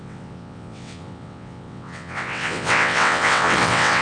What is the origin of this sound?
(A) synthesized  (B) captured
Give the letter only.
A